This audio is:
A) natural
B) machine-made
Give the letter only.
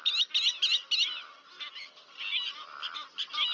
A